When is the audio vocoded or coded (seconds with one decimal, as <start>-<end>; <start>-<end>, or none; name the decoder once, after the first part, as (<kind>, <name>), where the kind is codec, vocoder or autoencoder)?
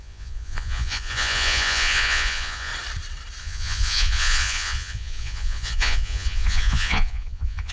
0.0-2.7 (vocoder, Vocos); 3.4-7.7